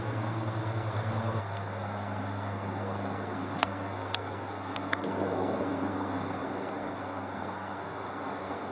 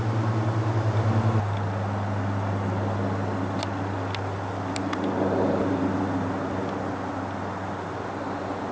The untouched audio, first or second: second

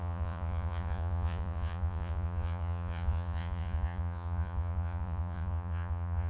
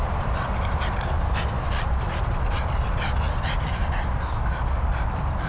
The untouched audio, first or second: second